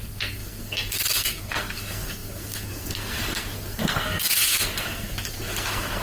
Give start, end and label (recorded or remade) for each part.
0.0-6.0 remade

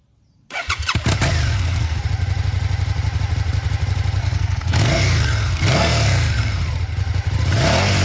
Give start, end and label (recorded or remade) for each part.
0.0-1.5 recorded; 1.5-2.0 remade; 2.0-4.2 recorded; 4.2-6.6 remade; 6.6-8.0 recorded

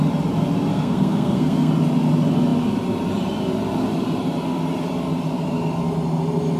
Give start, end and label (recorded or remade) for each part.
0.0-0.7 recorded; 0.7-1.7 remade; 1.7-6.6 recorded

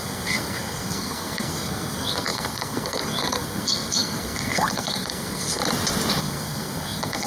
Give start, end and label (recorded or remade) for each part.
0.0-5.6 remade; 5.6-6.2 recorded; 6.2-7.3 remade

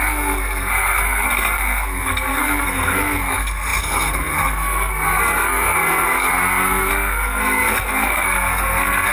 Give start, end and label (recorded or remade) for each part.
0.0-9.1 remade